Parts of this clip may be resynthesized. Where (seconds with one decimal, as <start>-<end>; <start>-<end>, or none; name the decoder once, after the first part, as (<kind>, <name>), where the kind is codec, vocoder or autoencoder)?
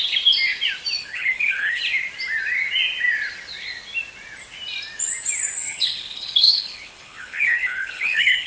1.0-1.8 (codec, HILCodec); 5.6-8.5